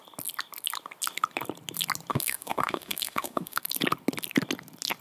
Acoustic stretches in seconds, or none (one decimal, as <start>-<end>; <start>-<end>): 0.0-2.1; 3.6-5.0